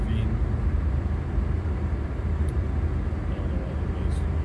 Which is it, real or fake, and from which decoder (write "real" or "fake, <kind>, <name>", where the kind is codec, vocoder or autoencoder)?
real